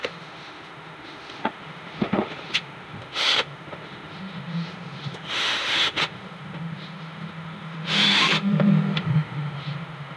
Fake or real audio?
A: fake